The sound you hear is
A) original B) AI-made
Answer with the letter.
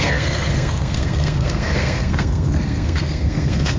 B